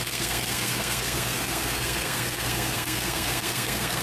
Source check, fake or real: fake